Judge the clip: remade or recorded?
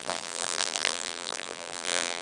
remade